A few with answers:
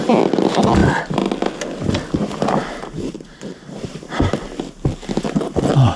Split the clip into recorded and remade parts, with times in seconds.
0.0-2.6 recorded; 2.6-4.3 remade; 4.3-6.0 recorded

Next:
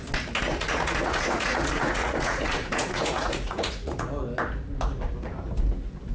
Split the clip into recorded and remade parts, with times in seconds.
0.0-0.4 recorded; 0.4-4.1 remade; 4.1-6.1 recorded